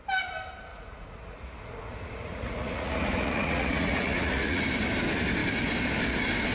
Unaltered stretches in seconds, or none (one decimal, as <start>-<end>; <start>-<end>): 0.0-0.7; 4.6-6.5